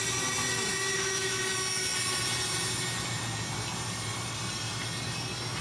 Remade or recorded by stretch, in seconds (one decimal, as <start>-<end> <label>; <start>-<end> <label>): 0.0-0.9 recorded; 0.9-1.4 remade; 1.4-5.6 recorded